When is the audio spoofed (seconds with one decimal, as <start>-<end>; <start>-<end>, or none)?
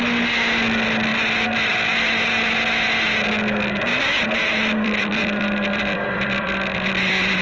3.9-7.4